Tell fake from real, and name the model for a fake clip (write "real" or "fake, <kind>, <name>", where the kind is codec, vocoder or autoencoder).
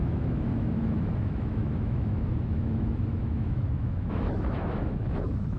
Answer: fake, autoencoder, DAC-VAE